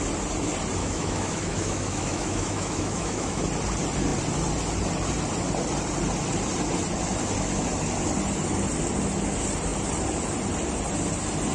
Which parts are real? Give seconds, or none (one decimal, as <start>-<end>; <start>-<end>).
0.0-0.8; 3.4-11.5